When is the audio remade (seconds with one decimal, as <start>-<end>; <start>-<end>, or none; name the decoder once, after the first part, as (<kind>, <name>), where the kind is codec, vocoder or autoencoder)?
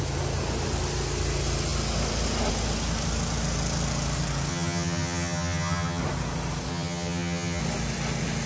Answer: 4.5-6.0 (vocoder, HiFi-GAN); 6.7-7.6